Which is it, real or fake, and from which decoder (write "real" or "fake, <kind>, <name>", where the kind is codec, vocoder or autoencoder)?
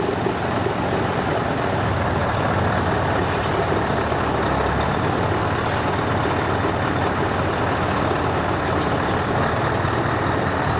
real